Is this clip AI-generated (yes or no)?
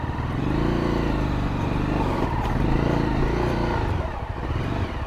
yes